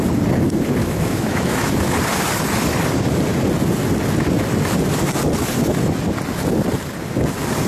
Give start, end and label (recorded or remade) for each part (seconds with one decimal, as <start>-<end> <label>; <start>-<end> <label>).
0.0-0.8 recorded; 0.8-1.7 remade; 1.7-7.7 recorded